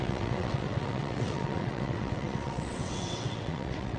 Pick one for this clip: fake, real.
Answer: fake